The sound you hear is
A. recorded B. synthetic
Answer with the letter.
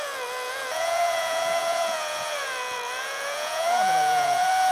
B